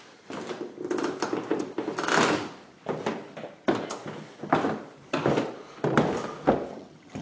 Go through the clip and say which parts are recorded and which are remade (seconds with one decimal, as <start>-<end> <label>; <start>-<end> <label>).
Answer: 0.0-6.7 recorded; 6.7-7.2 remade